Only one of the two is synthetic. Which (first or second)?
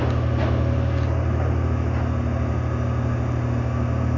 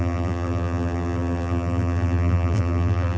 second